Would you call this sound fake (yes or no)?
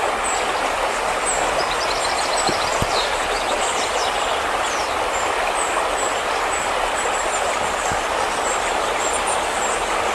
no